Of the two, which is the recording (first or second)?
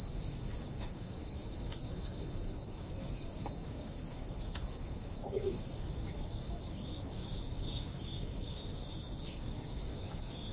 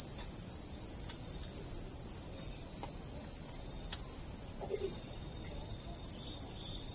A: second